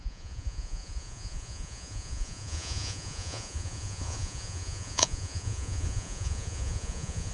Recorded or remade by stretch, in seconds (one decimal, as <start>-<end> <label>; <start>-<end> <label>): 0.0-7.3 remade

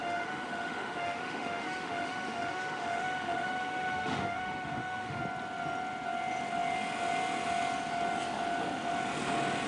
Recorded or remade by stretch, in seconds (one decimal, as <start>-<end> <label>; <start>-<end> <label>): 0.0-5.2 remade; 5.2-9.7 recorded

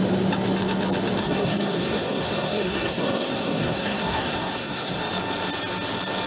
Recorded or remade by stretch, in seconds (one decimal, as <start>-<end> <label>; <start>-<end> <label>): 0.0-1.2 recorded; 1.2-5.0 remade; 5.0-6.3 recorded

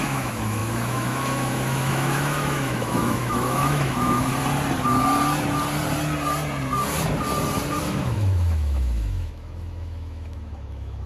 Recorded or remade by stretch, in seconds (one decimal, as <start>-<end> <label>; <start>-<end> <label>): 0.0-4.3 remade; 4.3-7.8 recorded; 7.8-11.1 remade

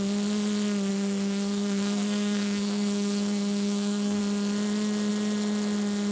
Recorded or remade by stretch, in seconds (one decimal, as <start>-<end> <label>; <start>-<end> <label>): 0.0-0.9 recorded; 0.9-4.2 remade; 4.2-6.1 recorded

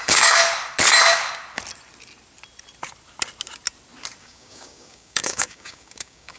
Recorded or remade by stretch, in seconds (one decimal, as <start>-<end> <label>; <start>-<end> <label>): 0.0-0.4 remade; 0.4-4.2 recorded; 4.2-6.4 remade

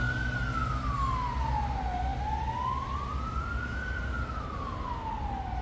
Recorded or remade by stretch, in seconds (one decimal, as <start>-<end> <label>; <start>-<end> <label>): 0.0-5.6 recorded